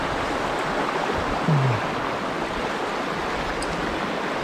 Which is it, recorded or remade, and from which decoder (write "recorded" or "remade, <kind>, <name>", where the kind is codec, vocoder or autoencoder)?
recorded